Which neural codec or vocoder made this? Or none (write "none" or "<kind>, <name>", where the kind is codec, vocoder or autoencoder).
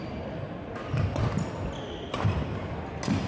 none